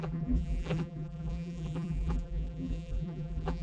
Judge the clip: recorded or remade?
remade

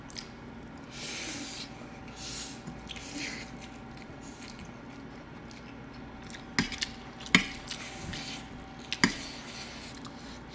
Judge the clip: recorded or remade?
recorded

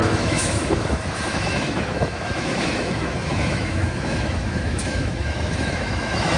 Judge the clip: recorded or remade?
remade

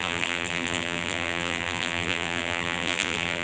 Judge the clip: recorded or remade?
remade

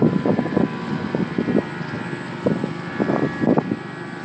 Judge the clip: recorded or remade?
recorded